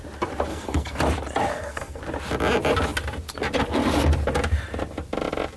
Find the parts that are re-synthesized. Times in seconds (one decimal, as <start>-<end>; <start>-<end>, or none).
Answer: 0.5-1.0; 1.5-2.0